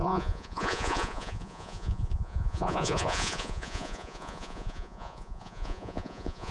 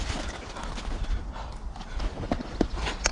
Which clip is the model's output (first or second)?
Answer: first